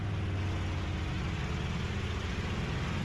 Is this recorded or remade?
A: recorded